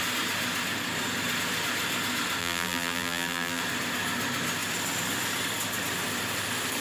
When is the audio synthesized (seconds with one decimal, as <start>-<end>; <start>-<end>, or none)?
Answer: 2.4-3.6